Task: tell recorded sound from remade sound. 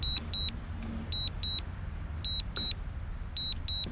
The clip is recorded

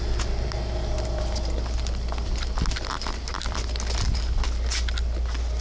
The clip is recorded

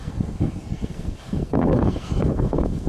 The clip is remade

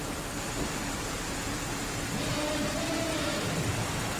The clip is recorded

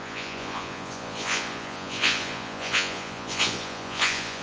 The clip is remade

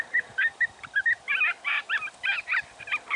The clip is recorded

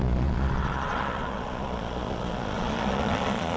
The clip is remade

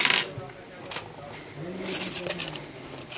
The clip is recorded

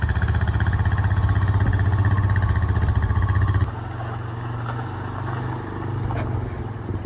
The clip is recorded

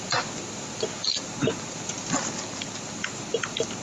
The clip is recorded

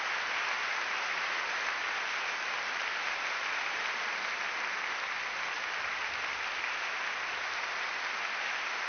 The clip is recorded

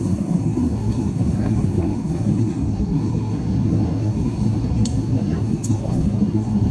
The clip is remade